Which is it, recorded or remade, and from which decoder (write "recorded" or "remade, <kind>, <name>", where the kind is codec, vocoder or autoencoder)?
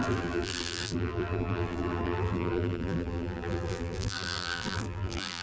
remade, vocoder, BigVGAN v2